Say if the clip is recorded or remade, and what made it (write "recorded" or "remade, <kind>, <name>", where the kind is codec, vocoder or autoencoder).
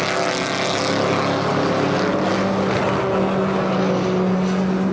recorded